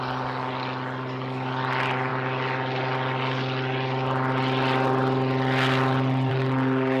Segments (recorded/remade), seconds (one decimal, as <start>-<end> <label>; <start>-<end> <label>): 0.0-7.0 recorded